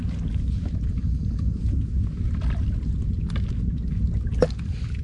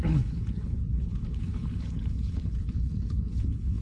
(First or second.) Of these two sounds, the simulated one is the second